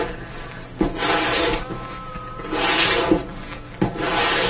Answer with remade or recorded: recorded